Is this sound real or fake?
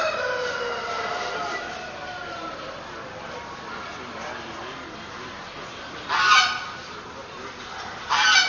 real